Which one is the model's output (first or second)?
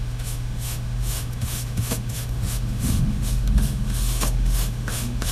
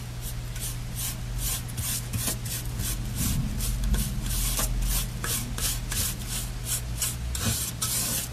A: first